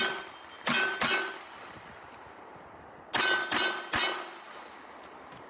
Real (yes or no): yes